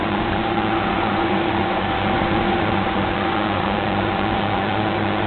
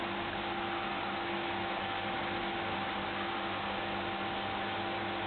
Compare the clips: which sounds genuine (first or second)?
second